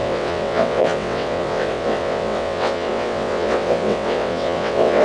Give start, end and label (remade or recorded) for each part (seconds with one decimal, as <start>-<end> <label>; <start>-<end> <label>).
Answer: 0.0-5.0 remade